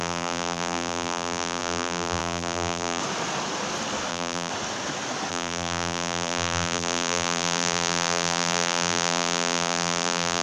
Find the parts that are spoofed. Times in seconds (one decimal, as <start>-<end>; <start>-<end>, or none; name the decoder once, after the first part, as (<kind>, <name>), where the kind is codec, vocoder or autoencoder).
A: 0.0-3.0 (vocoder, BigVGAN v2); 4.1-4.5; 5.3-10.4